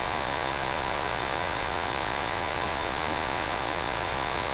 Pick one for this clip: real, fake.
fake